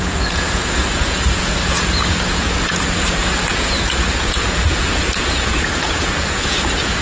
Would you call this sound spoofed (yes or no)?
yes